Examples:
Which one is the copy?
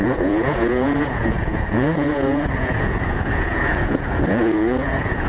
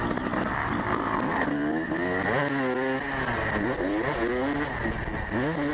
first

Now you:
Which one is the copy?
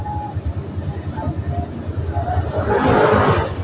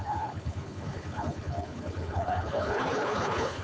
second